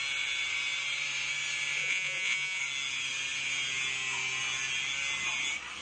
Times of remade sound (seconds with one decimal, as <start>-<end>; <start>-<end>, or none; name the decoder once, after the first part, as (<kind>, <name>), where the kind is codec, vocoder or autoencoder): 1.8-2.6 (vocoder, Vocos)